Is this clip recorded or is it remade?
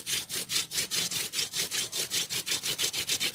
recorded